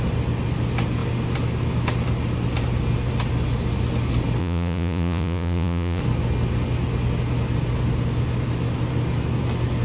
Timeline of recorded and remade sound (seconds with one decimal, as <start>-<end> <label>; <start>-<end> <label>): 0.0-4.4 recorded; 4.4-6.0 remade; 6.0-9.8 recorded